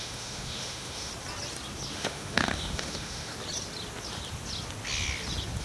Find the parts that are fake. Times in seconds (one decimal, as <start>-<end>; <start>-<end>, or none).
0.0-1.1; 1.9-3.3